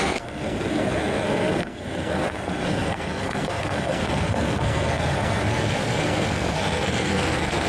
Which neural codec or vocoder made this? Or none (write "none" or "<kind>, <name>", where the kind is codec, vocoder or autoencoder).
codec, SNAC